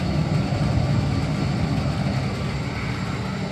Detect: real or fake real